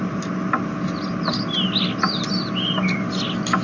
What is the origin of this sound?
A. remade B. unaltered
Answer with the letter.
B